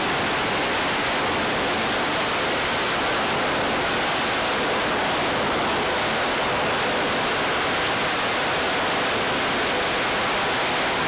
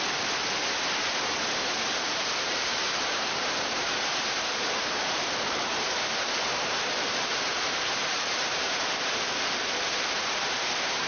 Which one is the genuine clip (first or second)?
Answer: first